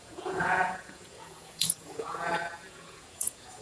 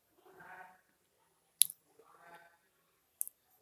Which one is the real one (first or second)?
second